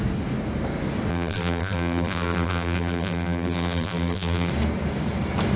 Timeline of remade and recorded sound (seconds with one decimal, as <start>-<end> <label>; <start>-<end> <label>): 0.0-1.1 recorded; 1.1-4.5 remade; 4.5-5.6 recorded